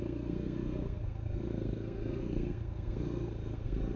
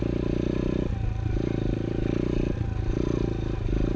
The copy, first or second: first